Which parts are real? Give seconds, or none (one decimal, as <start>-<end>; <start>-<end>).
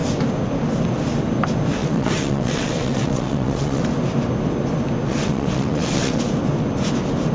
0.0-1.8; 3.8-5.1; 6.2-7.3